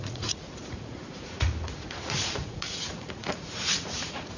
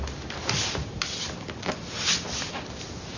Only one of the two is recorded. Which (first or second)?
second